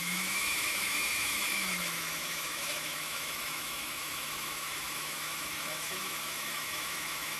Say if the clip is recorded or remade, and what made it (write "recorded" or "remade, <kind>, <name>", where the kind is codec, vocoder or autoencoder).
remade, autoencoder, DAC-VAE